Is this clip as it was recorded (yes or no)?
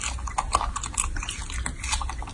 yes